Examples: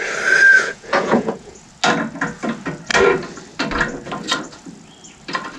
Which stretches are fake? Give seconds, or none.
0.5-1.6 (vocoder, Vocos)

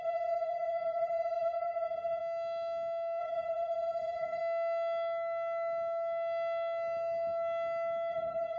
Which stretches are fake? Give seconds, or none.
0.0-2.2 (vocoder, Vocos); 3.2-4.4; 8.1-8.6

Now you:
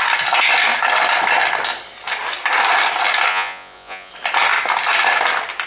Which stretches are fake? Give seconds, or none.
3.3-4.1 (vocoder, Vocos)

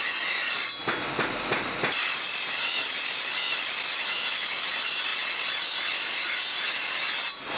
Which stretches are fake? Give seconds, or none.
none